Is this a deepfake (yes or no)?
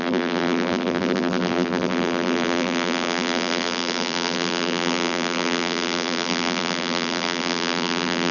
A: yes